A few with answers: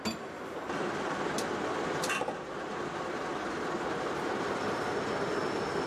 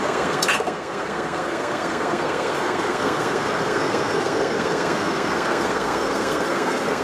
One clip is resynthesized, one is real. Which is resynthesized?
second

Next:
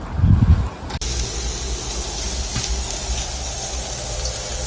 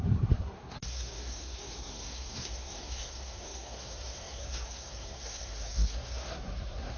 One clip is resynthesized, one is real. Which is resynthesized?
second